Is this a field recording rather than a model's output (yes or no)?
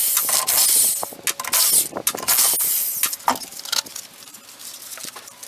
yes